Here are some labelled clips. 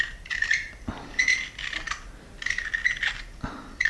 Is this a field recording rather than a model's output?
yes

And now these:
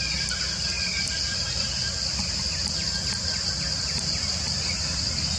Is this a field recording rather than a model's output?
yes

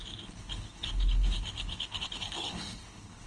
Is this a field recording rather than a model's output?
no